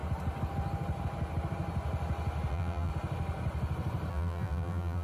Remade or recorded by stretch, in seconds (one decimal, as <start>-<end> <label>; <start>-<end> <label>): 0.0-2.5 recorded; 2.5-2.9 remade; 2.9-4.1 recorded; 4.1-5.0 remade